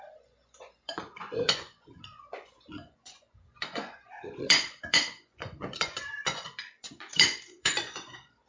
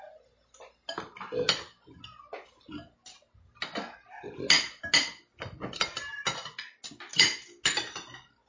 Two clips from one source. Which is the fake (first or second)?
first